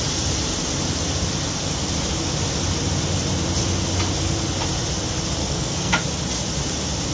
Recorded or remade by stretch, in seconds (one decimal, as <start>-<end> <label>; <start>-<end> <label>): 0.0-5.4 recorded; 5.4-5.9 remade; 5.9-7.1 recorded